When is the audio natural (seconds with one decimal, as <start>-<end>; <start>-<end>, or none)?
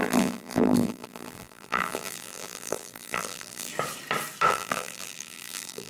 3.7-4.5